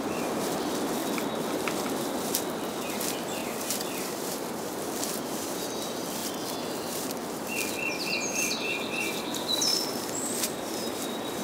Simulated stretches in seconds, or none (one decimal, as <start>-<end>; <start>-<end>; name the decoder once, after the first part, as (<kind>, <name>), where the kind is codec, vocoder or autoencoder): 0.0-1.0 (vocoder, BigVGAN v2); 1.5-6.2; 7.0-11.4